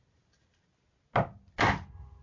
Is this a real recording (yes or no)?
yes